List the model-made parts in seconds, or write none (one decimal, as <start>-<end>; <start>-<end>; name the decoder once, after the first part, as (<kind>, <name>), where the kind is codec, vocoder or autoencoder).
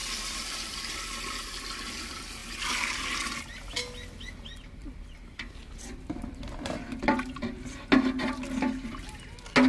0.0-0.7 (vocoder, BigVGAN v2); 2.4-3.3; 4.8-7.9